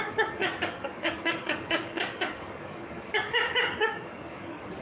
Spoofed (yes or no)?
yes